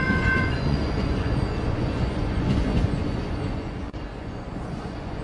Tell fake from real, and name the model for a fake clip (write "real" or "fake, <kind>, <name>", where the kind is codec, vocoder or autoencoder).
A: fake, vocoder, Vocos